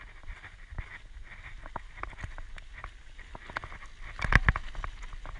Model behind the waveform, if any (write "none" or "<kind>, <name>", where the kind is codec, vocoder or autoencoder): none